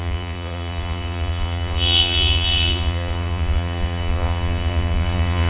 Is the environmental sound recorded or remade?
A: remade